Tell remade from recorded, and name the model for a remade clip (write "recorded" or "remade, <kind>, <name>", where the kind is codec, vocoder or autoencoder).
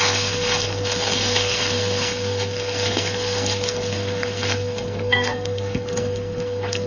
remade, codec, SNAC